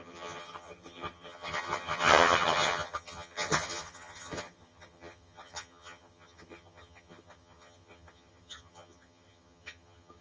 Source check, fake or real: fake